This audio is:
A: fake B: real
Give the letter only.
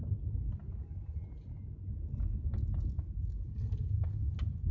B